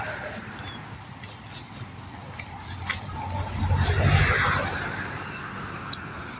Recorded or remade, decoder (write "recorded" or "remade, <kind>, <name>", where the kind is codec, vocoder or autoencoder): recorded